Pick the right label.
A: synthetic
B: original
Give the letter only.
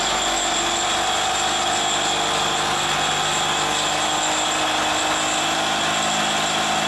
B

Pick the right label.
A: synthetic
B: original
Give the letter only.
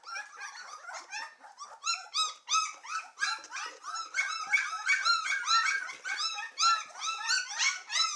B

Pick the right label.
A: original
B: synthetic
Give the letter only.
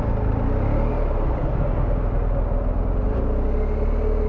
A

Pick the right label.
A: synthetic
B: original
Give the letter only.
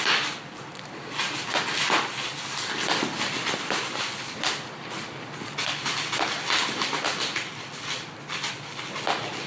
B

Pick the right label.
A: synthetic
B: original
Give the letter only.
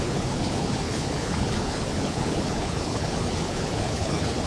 A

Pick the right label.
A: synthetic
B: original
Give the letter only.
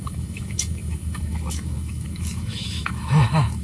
A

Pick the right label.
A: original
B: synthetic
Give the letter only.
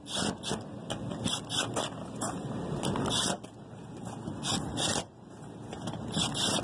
A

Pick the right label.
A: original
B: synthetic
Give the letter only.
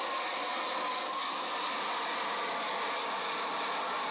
A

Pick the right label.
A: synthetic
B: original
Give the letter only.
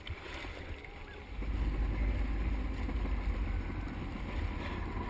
B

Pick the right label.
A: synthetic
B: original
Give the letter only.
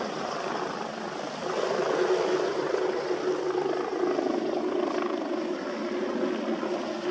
B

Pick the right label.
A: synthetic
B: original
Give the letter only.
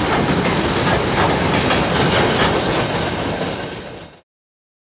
B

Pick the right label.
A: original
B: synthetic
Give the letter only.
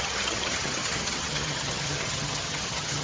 B